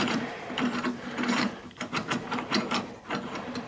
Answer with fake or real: fake